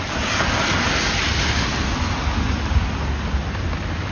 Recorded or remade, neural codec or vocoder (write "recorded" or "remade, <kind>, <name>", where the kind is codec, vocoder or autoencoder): recorded